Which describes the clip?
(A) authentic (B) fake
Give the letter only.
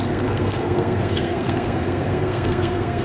B